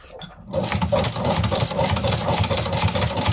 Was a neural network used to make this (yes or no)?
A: no